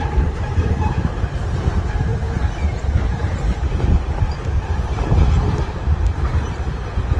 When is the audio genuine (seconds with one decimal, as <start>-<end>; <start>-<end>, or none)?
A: none

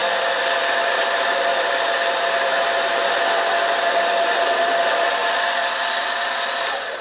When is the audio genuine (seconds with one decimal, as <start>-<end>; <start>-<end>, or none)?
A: 0.0-0.6; 5.2-5.9

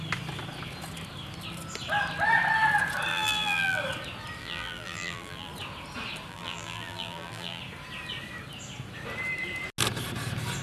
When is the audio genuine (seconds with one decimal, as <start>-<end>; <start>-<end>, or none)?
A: 0.0-3.1; 3.8-4.4; 5.5-6.3; 7.6-10.6